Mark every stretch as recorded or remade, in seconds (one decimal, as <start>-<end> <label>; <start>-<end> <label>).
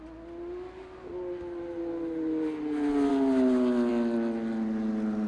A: 0.0-5.3 recorded